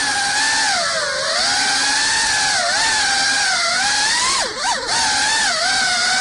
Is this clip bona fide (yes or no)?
yes